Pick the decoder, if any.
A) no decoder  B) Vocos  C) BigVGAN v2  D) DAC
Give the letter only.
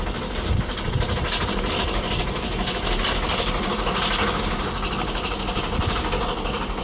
A